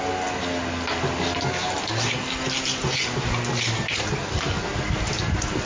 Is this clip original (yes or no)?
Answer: yes